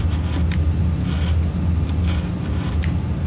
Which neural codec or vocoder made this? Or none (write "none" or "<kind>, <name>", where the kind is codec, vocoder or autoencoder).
none